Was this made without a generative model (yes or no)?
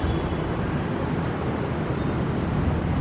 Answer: yes